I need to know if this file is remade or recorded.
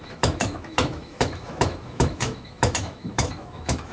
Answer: remade